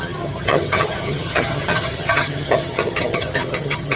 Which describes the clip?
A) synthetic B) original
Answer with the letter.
A